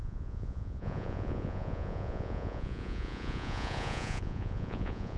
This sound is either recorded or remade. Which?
remade